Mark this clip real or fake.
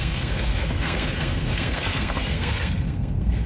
fake